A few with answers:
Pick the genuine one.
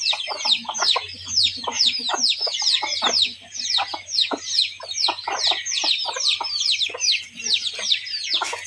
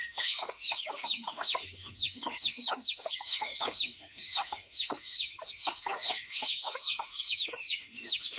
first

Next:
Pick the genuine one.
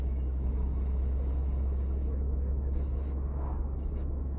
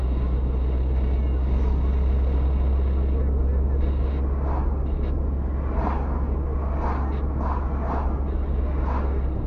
second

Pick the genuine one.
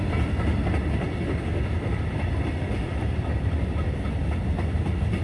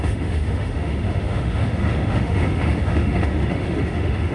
first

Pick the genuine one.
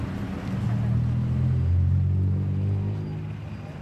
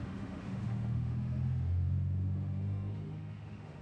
first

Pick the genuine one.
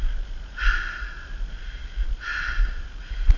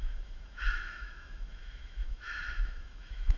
first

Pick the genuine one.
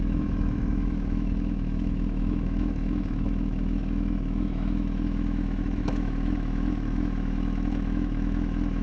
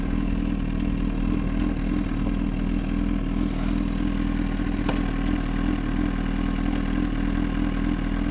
second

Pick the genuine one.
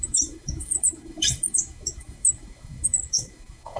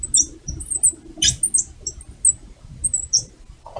second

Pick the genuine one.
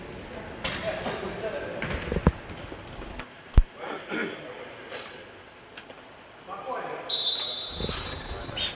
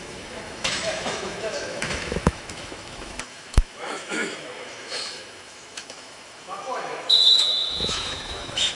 first